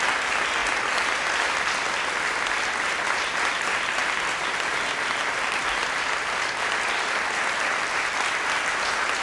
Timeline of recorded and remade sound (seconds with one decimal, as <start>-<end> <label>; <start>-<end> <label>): 0.0-9.2 recorded